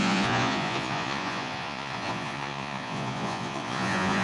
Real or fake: fake